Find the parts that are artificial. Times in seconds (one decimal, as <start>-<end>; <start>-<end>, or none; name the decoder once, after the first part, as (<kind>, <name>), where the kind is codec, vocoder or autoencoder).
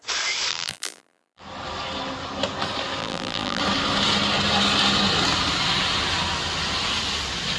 0.5-1.4 (vocoder, BigVGAN v2); 3.0-3.6